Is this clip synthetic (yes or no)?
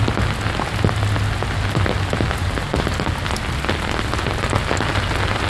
no